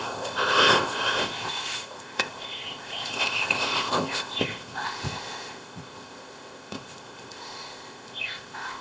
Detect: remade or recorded remade